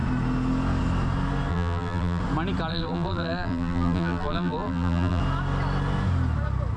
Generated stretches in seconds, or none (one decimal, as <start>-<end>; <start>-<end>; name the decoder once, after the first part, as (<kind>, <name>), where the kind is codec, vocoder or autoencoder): 1.5-2.2 (vocoder, BigVGAN v2); 2.7-5.2